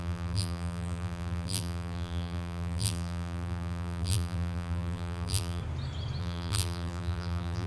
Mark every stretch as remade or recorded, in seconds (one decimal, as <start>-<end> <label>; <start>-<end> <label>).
0.0-5.6 remade; 5.6-6.2 recorded; 6.2-7.7 remade